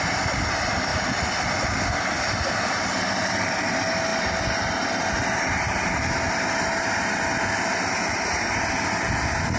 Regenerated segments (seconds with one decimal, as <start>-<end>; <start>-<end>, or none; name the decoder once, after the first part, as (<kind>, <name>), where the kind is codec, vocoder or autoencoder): none